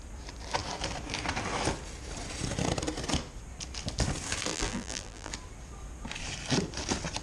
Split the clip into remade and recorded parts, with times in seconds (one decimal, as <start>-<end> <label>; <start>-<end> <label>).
0.0-4.5 recorded; 4.5-5.3 remade; 5.3-7.2 recorded